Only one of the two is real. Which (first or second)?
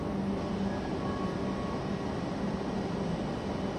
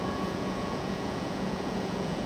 first